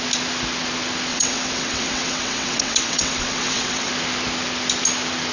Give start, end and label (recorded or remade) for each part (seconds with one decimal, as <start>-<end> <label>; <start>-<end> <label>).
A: 0.0-1.1 recorded; 1.1-3.9 remade; 3.9-5.3 recorded